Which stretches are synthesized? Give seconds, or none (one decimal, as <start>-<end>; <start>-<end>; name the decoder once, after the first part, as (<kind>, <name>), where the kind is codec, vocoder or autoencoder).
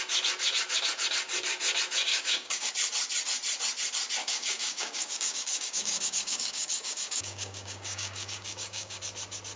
2.1-2.7 (codec, DAC); 4.2-9.0